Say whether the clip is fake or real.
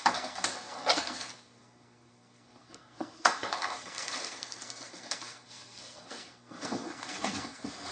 fake